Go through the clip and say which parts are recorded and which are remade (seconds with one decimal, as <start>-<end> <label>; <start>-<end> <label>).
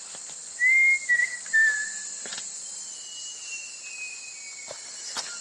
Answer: 0.0-5.4 recorded